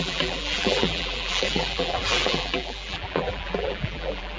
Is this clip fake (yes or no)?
yes